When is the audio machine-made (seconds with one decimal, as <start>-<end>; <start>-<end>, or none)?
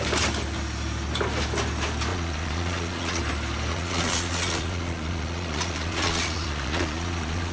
2.1-3.2; 3.7-7.5